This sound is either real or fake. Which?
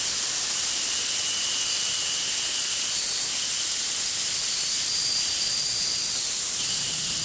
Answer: real